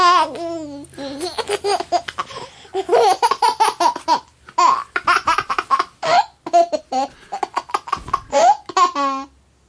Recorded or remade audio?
recorded